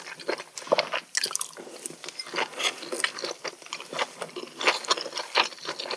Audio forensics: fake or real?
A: real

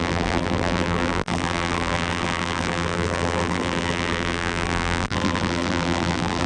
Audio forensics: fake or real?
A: fake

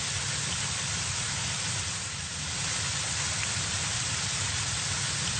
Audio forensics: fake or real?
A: real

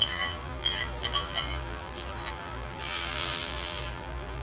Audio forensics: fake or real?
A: fake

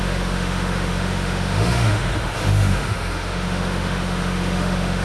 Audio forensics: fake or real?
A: fake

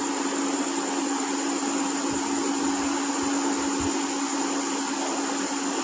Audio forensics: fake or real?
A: real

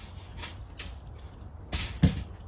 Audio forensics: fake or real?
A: real